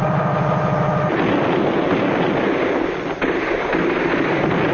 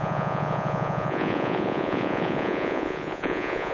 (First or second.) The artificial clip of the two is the second